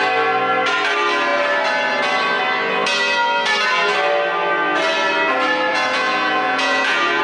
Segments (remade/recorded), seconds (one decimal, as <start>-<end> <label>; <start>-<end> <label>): 0.0-5.7 recorded; 5.7-7.2 remade